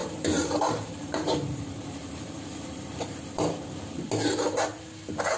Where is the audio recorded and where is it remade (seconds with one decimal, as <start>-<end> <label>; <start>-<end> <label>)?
0.0-3.2 remade; 3.2-5.4 recorded

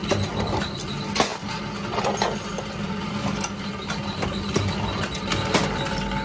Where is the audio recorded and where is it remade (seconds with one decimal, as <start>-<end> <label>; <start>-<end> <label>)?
0.0-0.8 remade; 0.8-6.2 recorded